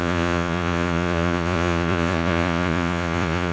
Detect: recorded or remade remade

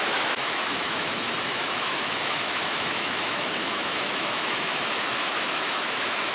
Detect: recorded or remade remade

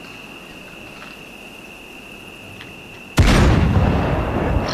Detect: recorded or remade recorded